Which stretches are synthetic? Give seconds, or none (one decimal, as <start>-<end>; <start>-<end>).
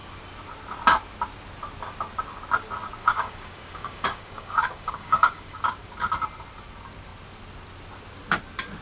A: 3.0-5.6